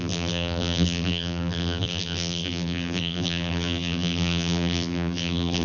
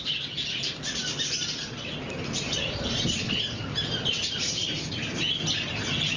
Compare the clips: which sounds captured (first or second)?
second